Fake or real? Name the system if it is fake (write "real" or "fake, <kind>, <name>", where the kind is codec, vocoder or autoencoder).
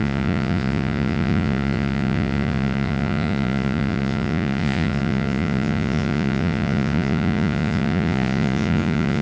fake, vocoder, Vocos